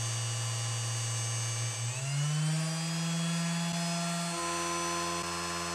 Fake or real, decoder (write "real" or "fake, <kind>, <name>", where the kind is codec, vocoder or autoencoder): real